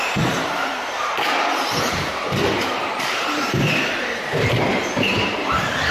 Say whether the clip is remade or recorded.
remade